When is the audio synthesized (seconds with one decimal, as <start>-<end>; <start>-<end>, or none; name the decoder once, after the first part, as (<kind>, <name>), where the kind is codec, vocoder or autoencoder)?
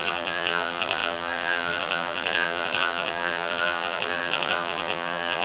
0.0-5.4 (vocoder, BigVGAN v2)